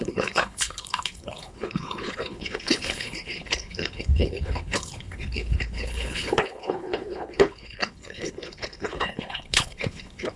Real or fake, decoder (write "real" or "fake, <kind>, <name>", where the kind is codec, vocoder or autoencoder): fake, codec, HILCodec